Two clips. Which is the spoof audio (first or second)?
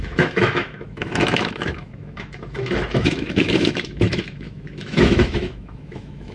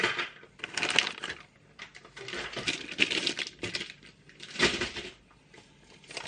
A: first